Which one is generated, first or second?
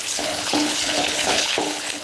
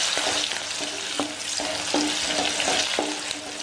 first